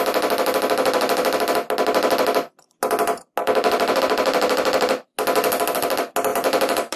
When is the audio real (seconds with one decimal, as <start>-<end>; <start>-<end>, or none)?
0.0-3.4; 4.0-6.3